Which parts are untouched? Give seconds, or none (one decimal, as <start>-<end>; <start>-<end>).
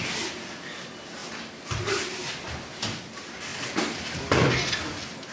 0.0-1.2; 2.4-3.5; 4.5-5.3